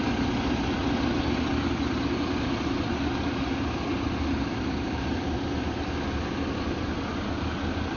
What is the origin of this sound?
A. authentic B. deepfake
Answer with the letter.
B